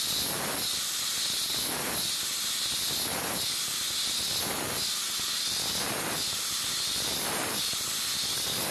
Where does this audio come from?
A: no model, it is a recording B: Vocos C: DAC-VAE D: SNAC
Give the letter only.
A